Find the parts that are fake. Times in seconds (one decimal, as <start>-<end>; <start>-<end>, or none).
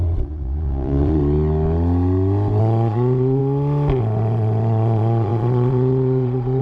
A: 0.0-1.2; 2.6-3.4; 4.0-6.6